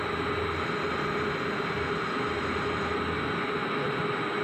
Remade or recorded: recorded